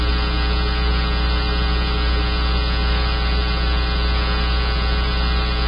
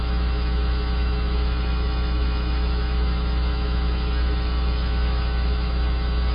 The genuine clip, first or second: first